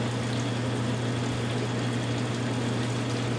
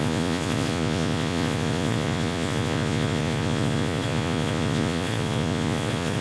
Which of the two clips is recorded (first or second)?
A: first